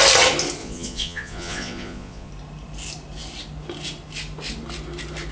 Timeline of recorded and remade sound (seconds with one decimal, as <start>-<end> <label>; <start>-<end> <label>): 0.0-0.6 recorded; 0.6-2.3 remade; 2.3-5.3 recorded